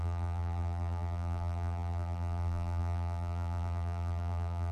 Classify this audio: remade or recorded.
remade